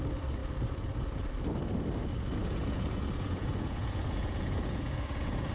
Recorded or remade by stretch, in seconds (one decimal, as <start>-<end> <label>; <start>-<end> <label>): 0.0-2.4 recorded; 2.4-5.5 remade